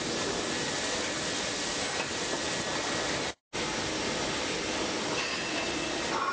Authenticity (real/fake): real